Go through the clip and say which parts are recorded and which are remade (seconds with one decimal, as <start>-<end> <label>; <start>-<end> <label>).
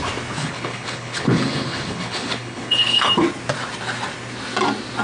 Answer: 0.0-0.4 recorded; 0.4-3.1 remade; 3.1-5.0 recorded